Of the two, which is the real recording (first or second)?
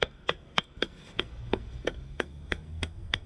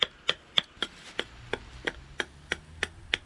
second